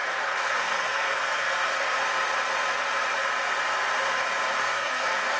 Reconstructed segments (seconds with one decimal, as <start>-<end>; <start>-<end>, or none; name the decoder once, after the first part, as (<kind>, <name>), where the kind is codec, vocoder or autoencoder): 0.0-2.0 (codec, SNAC); 4.6-5.4